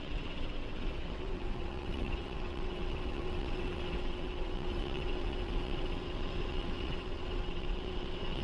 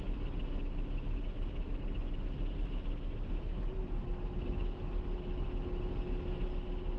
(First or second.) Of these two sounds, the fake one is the first